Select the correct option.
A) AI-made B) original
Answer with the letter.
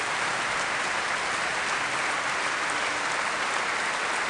B